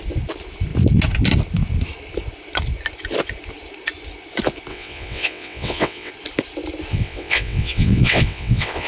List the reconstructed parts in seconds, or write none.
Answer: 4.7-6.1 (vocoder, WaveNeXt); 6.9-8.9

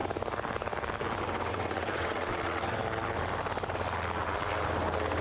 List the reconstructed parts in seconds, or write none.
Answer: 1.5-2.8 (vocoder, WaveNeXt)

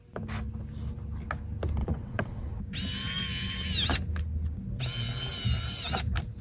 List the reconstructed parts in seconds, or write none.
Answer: 1.8-2.5 (vocoder, WaveNeXt)

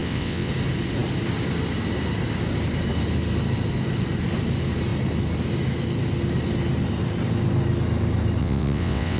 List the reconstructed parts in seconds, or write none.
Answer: 0.0-0.5 (vocoder, WaveNeXt); 8.4-9.2

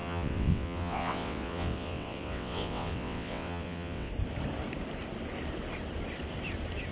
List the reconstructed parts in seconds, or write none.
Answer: 0.0-4.1 (vocoder, WaveNeXt)